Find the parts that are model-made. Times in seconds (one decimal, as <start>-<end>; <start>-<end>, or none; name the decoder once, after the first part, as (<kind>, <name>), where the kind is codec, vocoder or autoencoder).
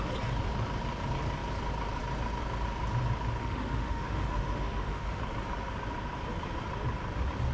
3.4-5.2 (autoencoder, DAC-VAE)